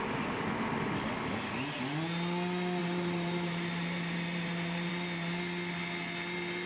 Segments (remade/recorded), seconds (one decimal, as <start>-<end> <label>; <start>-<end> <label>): 0.0-2.8 recorded; 2.8-4.9 remade; 4.9-6.7 recorded